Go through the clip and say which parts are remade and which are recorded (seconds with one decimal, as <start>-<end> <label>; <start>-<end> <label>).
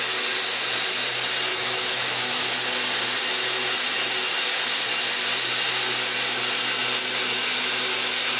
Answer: 0.0-1.5 recorded; 1.5-2.5 remade; 2.5-8.4 recorded